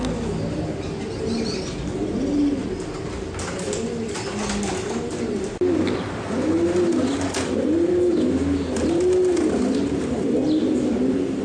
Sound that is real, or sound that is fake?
real